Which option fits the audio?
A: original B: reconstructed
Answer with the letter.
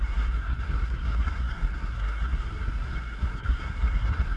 B